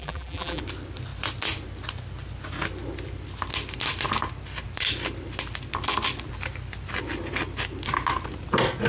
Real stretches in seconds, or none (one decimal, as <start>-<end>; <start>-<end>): 0.6-8.9

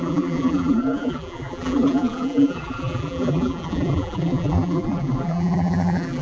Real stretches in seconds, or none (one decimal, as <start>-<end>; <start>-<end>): none

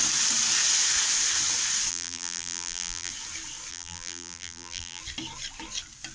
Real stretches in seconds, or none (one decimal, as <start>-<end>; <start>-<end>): 0.0-1.9; 3.1-3.7; 5.0-6.1

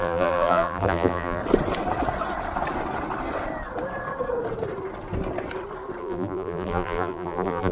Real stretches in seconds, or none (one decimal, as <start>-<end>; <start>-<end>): 1.4-6.0

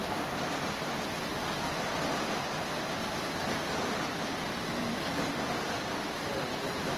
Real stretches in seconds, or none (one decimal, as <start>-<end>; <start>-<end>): 0.0-2.2; 6.4-7.0

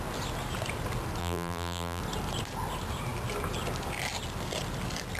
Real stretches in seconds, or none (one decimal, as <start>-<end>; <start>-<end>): 0.0-1.2; 2.0-5.2